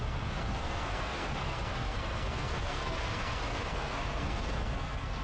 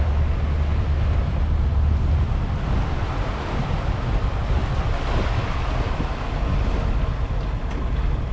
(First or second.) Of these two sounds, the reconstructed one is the first